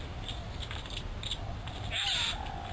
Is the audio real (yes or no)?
yes